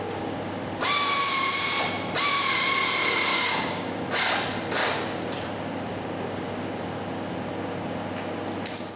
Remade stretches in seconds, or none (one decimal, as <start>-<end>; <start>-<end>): 3.3-4.0